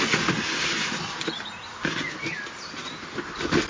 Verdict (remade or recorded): recorded